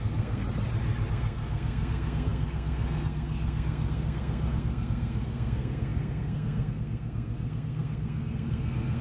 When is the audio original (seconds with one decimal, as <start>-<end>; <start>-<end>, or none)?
0.4-1.1